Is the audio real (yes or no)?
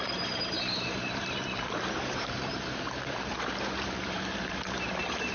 no